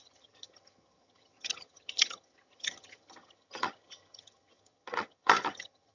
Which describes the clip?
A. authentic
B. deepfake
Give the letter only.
B